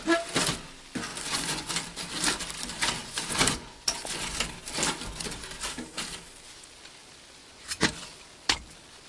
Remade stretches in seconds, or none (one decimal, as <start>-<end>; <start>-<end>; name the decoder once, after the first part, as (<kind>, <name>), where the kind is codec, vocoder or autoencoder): 1.1-1.7 (vocoder, Vocos); 3.0-4.4; 7.4-7.9